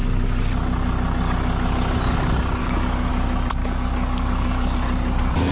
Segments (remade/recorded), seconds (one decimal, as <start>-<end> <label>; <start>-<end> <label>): 0.0-2.6 recorded; 2.6-3.1 remade; 3.1-3.6 recorded; 3.6-4.8 remade; 4.8-5.5 recorded